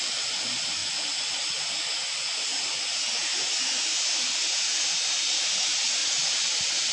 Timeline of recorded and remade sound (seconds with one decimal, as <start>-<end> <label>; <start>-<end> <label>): 0.0-6.9 recorded